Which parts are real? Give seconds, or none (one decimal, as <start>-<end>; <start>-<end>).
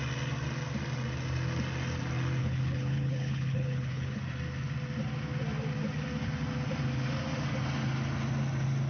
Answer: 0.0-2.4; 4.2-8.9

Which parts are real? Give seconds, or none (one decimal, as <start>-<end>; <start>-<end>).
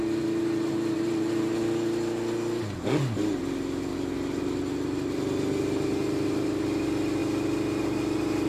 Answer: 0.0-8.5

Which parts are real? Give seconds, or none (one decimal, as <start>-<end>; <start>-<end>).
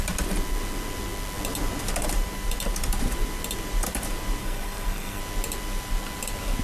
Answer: 0.0-4.4; 5.2-6.6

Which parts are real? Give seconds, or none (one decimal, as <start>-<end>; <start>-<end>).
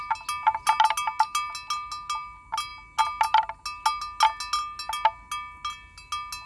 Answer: 0.0-6.5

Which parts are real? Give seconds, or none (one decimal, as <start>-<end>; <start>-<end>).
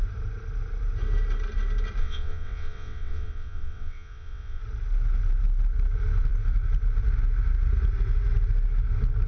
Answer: 0.0-2.0; 4.6-9.3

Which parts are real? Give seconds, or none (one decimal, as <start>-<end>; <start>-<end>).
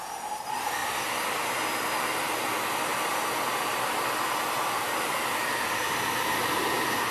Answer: 0.8-1.8; 2.9-3.5